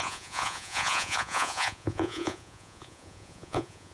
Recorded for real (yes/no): no